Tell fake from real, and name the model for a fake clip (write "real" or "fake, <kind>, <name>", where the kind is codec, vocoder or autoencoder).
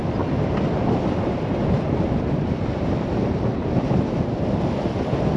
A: real